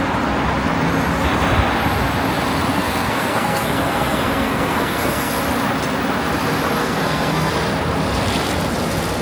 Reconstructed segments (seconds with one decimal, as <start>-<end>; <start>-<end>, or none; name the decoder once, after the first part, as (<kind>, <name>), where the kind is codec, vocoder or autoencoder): 2.7-5.4 (codec, SNAC); 6.8-7.5